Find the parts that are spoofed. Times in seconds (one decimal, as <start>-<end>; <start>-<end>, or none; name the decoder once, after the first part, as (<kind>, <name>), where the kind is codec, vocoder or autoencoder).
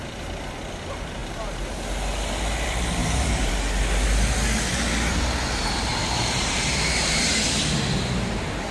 3.0-3.5 (vocoder, BigVGAN v2); 5.9-7.2